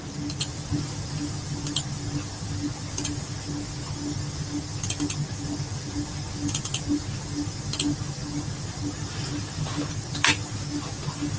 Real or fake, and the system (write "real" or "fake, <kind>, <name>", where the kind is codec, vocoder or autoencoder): real